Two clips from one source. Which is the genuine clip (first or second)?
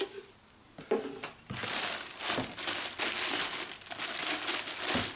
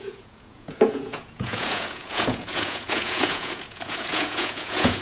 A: first